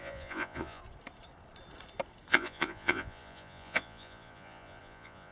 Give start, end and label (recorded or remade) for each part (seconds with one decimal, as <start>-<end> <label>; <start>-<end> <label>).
0.0-0.8 remade; 0.8-2.3 recorded; 2.3-5.3 remade